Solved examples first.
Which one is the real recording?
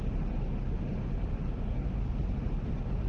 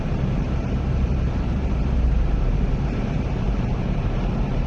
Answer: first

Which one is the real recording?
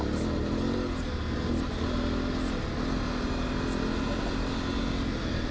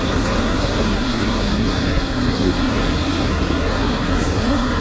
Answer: first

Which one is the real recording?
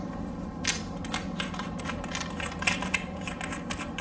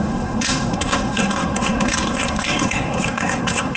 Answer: first